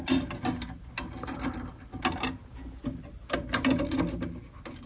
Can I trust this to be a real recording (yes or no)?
yes